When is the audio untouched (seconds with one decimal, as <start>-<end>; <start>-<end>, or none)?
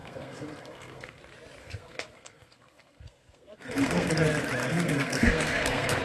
1.2-1.6; 4.1-4.6